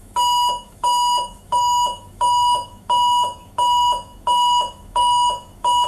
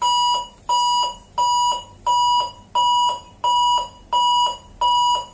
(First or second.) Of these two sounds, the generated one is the first